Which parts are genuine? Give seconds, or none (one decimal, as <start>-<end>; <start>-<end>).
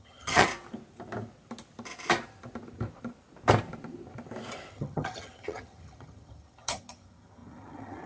0.5-4.7